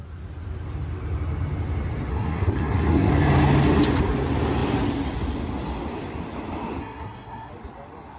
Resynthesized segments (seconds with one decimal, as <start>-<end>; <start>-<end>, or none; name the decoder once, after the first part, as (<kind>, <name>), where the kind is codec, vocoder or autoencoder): 2.1-3.1 (codec, SNAC); 6.8-7.5